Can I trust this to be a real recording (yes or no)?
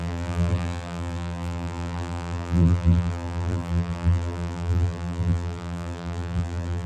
no